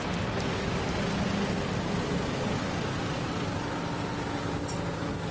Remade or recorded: recorded